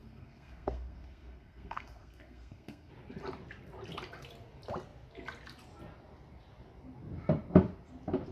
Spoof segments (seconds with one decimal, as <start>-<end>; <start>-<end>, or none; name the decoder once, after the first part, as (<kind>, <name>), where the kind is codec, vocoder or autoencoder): 0.0-2.9 (codec, SNAC)

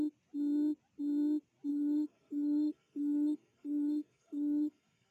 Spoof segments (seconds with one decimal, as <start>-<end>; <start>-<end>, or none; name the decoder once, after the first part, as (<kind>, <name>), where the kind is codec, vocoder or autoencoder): 1.7-5.1 (codec, SNAC)

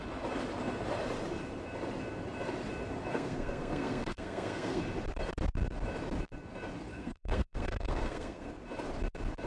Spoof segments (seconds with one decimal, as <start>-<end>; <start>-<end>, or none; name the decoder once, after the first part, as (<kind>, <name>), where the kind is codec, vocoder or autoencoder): 3.1-4.8 (codec, SNAC); 6.9-8.5

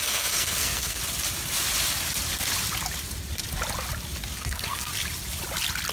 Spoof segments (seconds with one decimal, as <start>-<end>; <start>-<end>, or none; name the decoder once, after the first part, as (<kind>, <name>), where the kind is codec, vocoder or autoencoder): 0.0-1.0 (codec, SNAC); 4.4-4.9